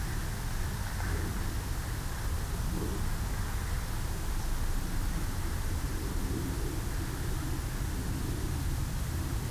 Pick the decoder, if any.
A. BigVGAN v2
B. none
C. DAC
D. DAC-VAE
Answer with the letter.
B